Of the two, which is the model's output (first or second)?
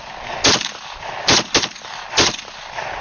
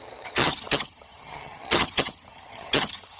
second